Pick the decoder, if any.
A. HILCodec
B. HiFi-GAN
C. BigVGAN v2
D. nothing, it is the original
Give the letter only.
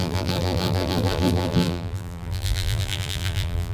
C